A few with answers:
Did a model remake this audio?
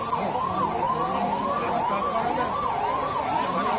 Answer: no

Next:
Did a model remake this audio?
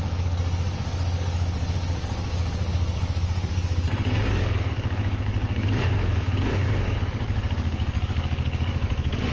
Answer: yes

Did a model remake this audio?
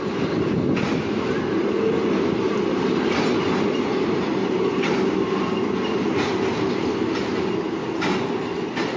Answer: no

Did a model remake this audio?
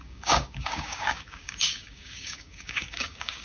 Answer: yes